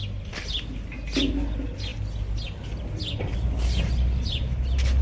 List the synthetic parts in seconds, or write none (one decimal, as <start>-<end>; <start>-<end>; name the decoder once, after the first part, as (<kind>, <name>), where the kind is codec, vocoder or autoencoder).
none